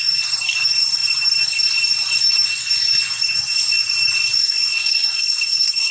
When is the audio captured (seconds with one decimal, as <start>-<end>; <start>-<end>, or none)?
0.0-4.4